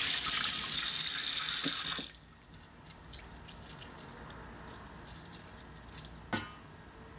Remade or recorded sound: recorded